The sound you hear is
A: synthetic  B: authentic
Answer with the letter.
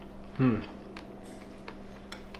B